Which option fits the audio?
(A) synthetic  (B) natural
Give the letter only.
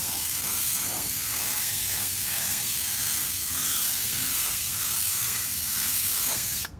A